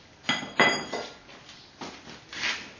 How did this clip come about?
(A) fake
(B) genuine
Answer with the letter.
B